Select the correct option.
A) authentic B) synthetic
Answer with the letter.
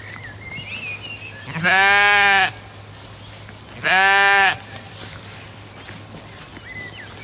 A